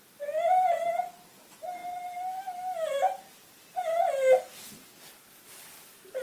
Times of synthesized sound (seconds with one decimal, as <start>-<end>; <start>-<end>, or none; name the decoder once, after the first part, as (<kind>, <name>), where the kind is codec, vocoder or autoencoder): none